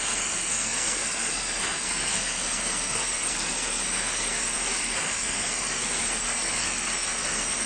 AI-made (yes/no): yes